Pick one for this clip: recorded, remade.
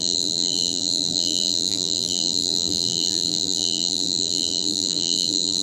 remade